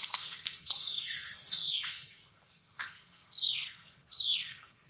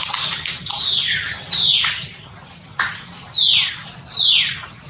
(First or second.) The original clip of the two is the second